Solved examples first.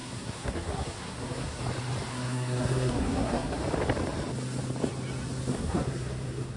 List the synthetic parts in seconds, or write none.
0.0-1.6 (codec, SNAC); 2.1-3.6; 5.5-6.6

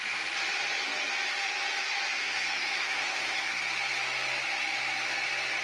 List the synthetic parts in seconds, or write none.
2.2-3.6 (codec, SNAC)

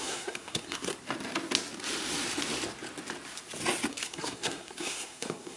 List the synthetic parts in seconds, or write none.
0.0-0.9 (codec, SNAC); 3.9-5.6

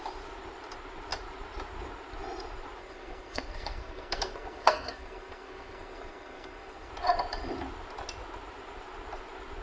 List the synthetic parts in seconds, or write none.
2.8-6.9 (codec, SNAC)

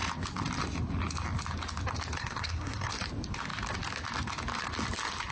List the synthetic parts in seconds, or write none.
2.2-2.9 (codec, SNAC)

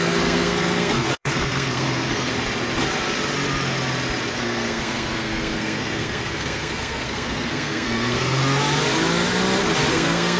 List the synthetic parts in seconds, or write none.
0.0-2.3 (codec, SNAC); 4.3-8.4; 9.9-10.4